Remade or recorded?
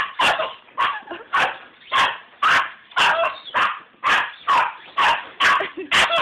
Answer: recorded